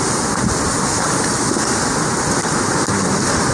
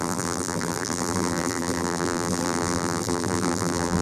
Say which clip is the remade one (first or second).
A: second